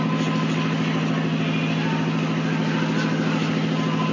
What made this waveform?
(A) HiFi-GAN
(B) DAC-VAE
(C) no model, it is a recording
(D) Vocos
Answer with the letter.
C